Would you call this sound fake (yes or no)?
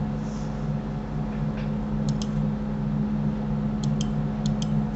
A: no